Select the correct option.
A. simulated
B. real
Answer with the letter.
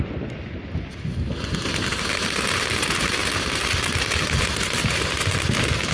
B